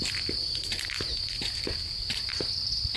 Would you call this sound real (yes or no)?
yes